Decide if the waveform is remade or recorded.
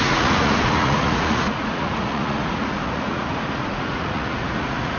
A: remade